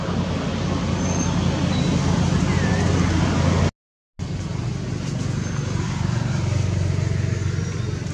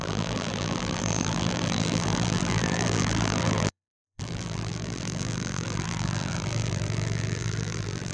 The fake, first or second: second